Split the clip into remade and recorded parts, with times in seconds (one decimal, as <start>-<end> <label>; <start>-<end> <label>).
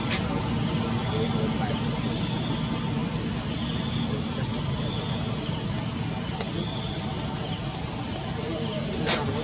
0.0-9.4 recorded